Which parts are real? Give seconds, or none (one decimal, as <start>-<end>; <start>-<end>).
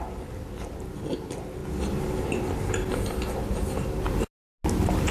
0.0-5.1